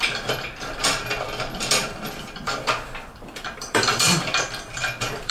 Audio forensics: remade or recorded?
remade